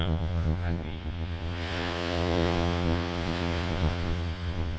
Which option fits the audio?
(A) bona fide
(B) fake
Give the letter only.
B